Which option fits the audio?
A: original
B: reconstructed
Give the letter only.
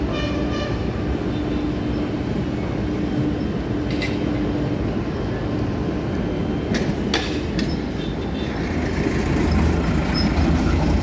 A